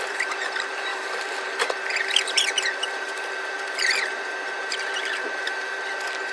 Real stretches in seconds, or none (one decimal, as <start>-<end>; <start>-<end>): none